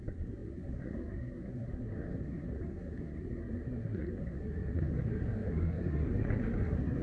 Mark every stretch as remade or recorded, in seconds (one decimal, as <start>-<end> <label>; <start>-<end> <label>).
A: 0.0-7.0 remade